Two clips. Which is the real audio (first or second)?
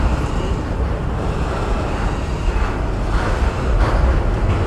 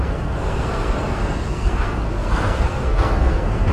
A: first